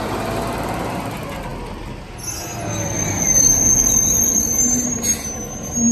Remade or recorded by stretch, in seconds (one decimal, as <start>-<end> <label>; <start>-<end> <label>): 0.0-5.9 recorded